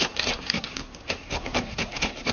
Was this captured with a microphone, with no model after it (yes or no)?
no